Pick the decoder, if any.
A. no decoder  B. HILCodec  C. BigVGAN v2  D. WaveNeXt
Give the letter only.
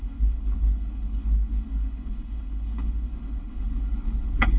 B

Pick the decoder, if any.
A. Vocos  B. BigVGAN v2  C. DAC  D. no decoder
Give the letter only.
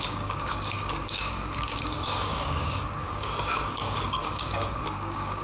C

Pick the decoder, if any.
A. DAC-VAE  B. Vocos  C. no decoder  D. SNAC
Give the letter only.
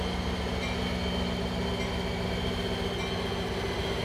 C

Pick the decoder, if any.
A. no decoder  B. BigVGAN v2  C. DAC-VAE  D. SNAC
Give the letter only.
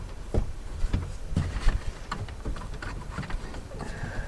B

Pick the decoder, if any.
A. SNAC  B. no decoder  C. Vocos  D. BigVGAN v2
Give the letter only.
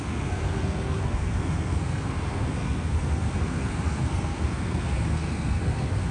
A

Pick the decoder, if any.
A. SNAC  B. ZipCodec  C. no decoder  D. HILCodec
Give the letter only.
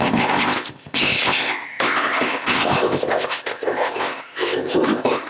B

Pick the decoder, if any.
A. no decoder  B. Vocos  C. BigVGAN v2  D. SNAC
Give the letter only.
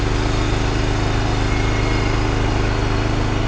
A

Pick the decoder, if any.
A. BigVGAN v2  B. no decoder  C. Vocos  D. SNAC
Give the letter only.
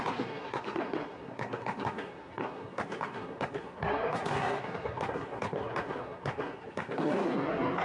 D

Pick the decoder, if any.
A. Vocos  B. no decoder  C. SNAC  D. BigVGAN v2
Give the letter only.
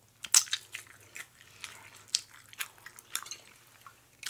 B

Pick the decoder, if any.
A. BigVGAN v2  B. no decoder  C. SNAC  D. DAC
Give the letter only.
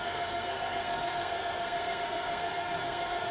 C